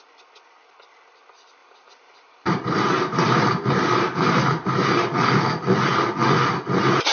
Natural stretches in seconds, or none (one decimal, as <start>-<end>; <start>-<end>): 0.0-1.6; 4.9-7.1